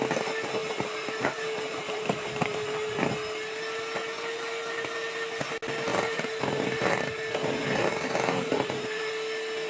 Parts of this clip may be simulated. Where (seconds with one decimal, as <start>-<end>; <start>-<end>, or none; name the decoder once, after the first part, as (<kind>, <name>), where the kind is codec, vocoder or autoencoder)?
0.6-3.1 (vocoder, BigVGAN v2); 5.9-7.0; 7.6-9.1